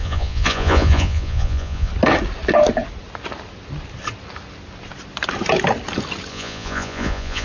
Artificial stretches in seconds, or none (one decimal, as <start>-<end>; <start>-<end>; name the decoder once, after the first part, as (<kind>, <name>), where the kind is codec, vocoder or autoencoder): 0.0-1.9 (vocoder, Vocos); 6.3-7.4